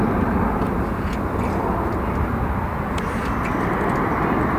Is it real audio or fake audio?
real